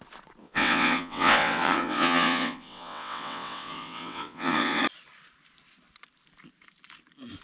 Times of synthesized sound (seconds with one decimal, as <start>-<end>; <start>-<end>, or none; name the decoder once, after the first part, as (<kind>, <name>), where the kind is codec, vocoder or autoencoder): 0.4-4.8 (vocoder, WaveNeXt)